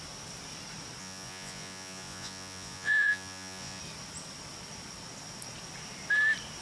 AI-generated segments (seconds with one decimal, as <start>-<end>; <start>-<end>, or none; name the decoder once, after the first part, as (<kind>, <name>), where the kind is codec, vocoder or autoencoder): 1.0-3.8 (vocoder, Vocos)

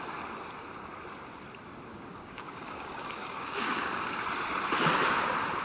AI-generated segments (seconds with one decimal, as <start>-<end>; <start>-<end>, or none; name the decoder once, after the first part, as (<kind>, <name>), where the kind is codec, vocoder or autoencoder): 1.9-4.2 (codec, DAC)

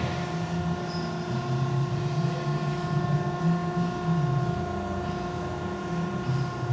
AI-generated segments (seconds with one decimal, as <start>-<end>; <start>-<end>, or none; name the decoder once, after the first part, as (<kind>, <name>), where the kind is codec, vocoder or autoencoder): none

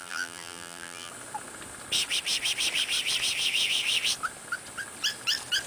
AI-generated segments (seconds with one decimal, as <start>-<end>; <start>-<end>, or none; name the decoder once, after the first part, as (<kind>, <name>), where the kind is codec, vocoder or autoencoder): 0.0-1.1 (vocoder, BigVGAN v2)

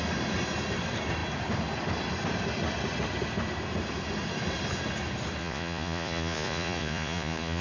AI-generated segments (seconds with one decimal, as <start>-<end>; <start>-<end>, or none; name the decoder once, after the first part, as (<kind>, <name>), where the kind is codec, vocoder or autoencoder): 5.4-7.6 (vocoder, Vocos)